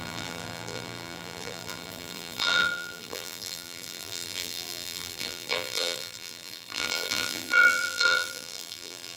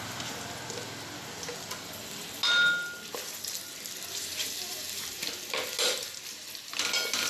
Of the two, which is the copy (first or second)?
first